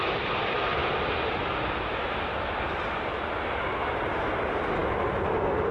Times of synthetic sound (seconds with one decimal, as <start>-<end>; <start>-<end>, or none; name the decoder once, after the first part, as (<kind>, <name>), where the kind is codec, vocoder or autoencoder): none